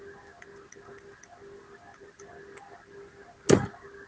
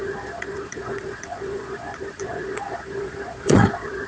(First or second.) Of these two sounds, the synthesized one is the second